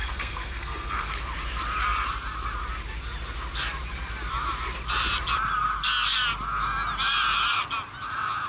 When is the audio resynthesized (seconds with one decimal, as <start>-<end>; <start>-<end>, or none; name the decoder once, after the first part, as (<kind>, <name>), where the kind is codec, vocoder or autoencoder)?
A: 0.0-1.1 (codec, SNAC)